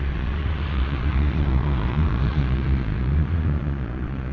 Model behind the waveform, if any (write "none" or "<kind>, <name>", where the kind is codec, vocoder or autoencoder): vocoder, Vocos